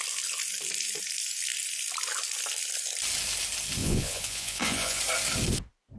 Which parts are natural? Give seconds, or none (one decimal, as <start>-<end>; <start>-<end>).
0.0-3.8; 5.0-6.0